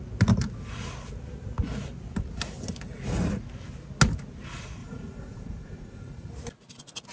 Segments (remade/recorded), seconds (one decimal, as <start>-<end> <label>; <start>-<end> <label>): 0.0-4.8 recorded; 4.8-6.3 remade; 6.3-7.1 recorded